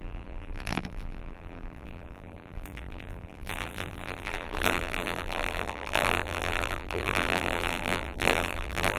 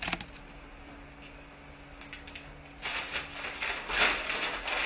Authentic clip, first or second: second